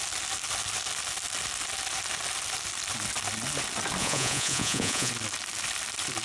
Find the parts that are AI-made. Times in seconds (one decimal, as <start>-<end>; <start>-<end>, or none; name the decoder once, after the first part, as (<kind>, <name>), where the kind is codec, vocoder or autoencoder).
4.0-5.1 (vocoder, Vocos)